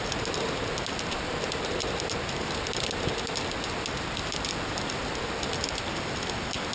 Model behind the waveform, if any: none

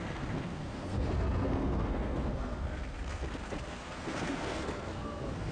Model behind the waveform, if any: codec, SNAC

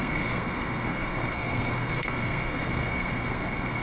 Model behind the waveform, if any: codec, SNAC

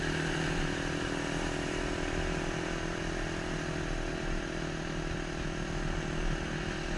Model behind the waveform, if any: none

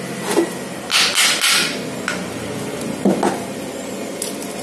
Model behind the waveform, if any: none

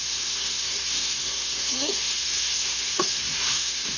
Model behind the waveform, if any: codec, SNAC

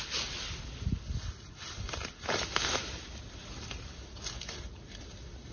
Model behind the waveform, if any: none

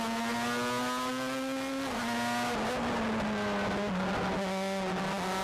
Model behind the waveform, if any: none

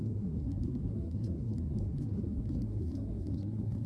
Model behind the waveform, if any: codec, SNAC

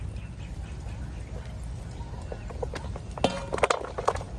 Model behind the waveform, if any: none